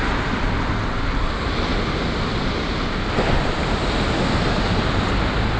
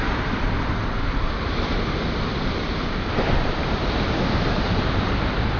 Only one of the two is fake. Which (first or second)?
second